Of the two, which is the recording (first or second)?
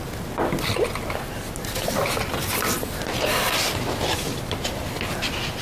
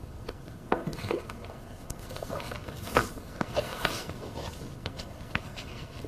first